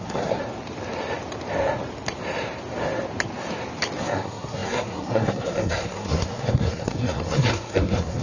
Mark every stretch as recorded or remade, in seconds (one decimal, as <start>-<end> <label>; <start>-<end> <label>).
0.0-0.4 remade; 0.4-4.0 recorded; 4.0-8.2 remade